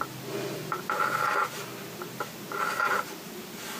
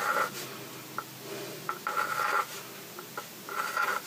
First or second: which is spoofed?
first